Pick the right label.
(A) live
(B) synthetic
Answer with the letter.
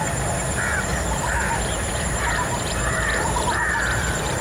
B